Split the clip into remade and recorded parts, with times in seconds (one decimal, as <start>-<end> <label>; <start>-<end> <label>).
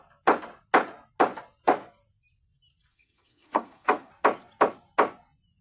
0.0-2.9 recorded; 2.9-4.1 remade; 4.1-5.6 recorded